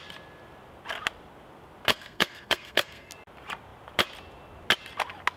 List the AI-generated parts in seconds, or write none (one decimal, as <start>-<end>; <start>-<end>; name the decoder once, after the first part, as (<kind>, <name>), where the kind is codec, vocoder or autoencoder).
1.9-3.1 (codec, SNAC)